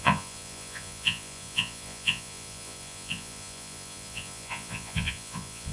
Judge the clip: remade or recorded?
remade